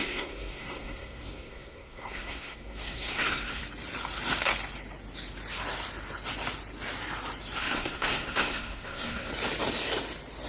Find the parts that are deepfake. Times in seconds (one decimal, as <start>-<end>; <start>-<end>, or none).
0.0-3.6; 7.6-9.3